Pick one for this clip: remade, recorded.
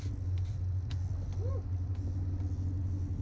recorded